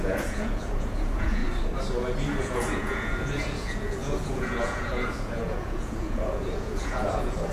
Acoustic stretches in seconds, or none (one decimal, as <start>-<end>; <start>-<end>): 1.4-2.4